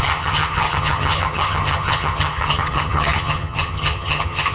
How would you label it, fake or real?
fake